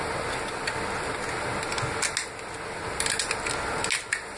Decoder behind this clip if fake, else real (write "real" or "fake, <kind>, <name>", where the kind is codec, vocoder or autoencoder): real